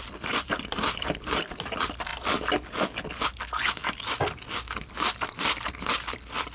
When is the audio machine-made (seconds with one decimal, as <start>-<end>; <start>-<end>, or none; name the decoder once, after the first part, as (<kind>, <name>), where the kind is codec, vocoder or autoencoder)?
0.0-3.8 (vocoder, BigVGAN v2); 5.7-6.5